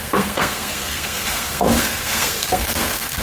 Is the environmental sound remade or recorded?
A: remade